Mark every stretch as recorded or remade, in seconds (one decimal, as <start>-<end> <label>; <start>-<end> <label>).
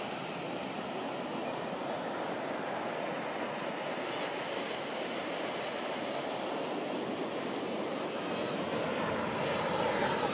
0.0-10.3 recorded